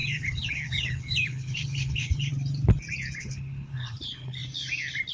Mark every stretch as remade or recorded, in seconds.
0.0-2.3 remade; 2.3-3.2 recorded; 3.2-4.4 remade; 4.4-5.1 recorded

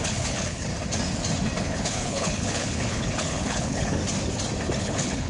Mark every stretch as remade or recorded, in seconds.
0.0-0.7 remade; 0.7-1.6 recorded; 1.6-4.0 remade; 4.0-4.8 recorded; 4.8-5.3 remade

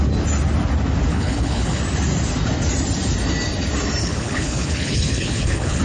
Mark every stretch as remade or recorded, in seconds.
0.0-1.1 recorded; 1.1-1.8 remade; 1.8-4.0 recorded; 4.0-5.8 remade

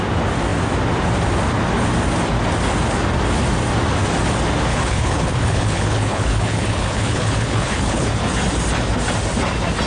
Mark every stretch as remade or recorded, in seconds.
0.0-4.7 recorded; 4.7-8.1 remade; 8.1-9.9 recorded

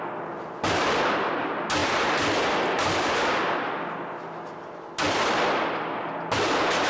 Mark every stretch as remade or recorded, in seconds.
0.0-6.9 recorded

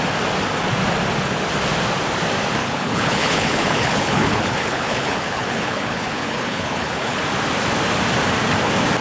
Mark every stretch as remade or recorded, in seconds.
0.0-2.6 recorded; 2.6-7.2 remade; 7.2-9.0 recorded

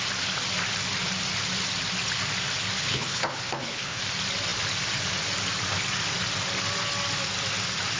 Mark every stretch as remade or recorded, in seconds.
0.0-2.8 recorded; 2.8-4.0 remade; 4.0-8.0 recorded